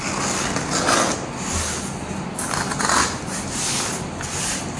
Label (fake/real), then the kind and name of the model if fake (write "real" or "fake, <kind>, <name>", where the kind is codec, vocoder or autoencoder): real